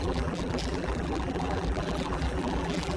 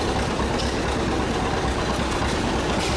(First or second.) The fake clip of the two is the first